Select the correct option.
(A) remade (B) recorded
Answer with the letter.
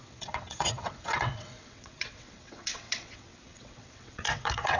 A